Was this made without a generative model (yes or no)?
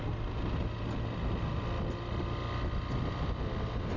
yes